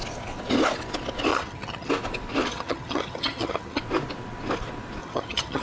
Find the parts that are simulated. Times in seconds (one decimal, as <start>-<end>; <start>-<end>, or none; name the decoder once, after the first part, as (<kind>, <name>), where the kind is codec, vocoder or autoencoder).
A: 1.3-1.9 (vocoder, HiFi-GAN); 2.5-3.8; 5.0-5.6